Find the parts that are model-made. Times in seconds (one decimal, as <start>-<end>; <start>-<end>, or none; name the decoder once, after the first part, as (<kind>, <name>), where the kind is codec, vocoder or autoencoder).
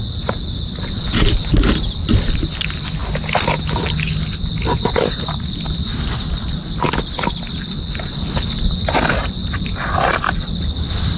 none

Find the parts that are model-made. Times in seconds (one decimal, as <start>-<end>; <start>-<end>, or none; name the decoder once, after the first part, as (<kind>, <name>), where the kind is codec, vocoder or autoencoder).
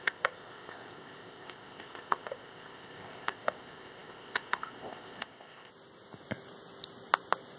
0.0-5.7 (codec, ZipCodec)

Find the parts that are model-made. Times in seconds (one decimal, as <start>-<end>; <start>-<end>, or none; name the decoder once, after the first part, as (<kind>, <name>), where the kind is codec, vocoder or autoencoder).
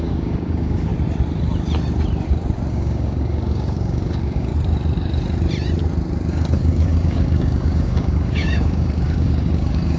0.0-0.9 (codec, DAC); 2.7-4.5; 6.3-10.0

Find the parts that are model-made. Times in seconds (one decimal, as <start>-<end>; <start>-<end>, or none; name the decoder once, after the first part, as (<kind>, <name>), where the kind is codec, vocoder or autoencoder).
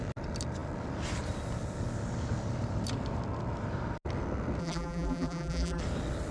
4.6-5.8 (vocoder, BigVGAN v2)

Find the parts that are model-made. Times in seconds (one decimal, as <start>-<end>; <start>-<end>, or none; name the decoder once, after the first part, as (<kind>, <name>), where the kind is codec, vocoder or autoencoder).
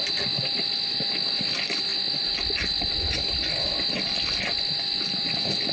none